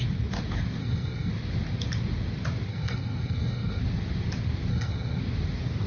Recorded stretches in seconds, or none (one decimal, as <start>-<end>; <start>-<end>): 0.0-0.8; 1.3-2.7; 3.8-4.7; 5.2-5.9

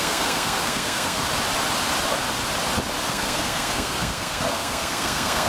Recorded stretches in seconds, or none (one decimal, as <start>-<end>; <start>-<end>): 1.2-3.1

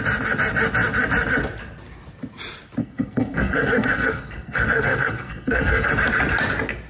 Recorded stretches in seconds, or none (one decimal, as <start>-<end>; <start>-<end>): 0.0-2.8; 5.9-6.9